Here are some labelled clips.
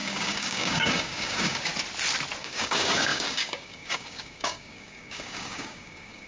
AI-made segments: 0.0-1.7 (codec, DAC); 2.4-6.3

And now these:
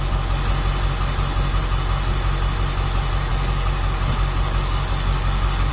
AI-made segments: 3.3-5.7 (codec, DAC)

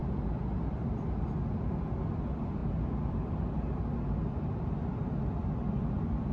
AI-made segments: none

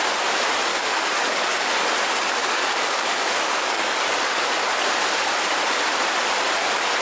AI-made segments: 0.7-1.7 (codec, DAC); 2.4-4.7